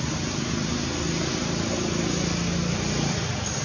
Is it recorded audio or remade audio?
recorded